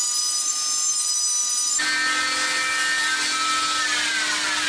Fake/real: real